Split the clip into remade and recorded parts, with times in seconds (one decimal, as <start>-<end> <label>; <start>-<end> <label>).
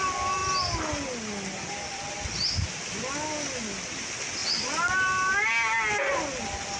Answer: 0.0-6.8 recorded